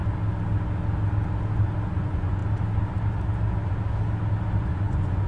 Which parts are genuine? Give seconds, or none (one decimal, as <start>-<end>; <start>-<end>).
0.0-2.0; 2.4-4.6